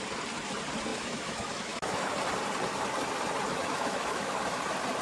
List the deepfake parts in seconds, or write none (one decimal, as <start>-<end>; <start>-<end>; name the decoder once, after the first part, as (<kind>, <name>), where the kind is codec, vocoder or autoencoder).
0.9-2.1 (autoencoder, DAC-VAE); 3.5-4.4